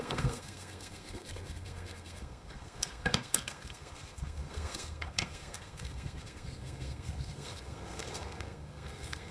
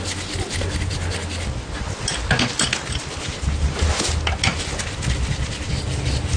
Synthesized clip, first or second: first